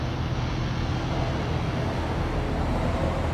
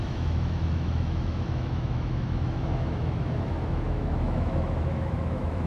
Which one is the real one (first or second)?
first